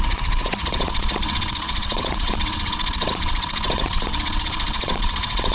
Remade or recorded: remade